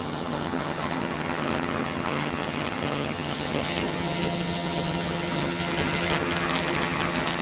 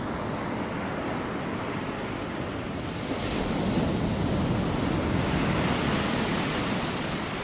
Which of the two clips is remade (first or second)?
first